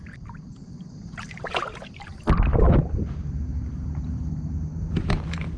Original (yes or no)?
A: yes